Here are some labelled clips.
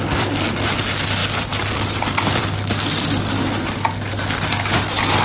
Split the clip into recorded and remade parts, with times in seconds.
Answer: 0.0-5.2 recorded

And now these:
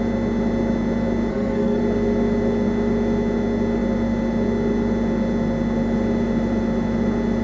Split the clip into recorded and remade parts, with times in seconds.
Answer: 0.0-1.3 recorded; 1.3-1.8 remade; 1.8-7.4 recorded

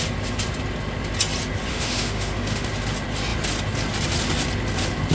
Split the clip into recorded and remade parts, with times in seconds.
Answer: 0.0-1.7 recorded; 1.7-2.7 remade; 2.7-5.1 recorded

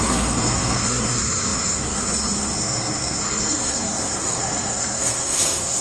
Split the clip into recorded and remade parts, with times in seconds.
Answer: 0.0-5.8 remade